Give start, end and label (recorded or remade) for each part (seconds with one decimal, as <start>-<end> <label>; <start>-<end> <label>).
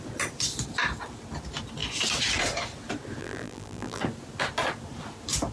0.0-3.2 recorded; 3.2-4.0 remade; 4.0-5.5 recorded